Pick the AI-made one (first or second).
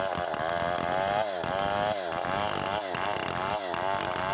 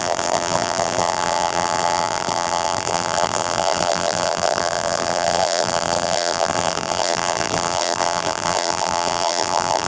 second